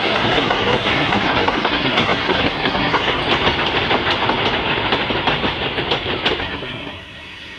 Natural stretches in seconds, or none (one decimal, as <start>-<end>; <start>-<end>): 3.2-6.4